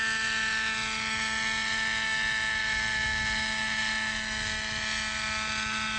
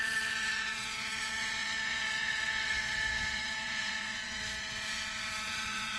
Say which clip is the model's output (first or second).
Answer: second